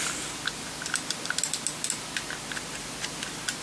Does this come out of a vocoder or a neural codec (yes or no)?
no